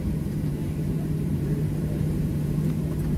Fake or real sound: fake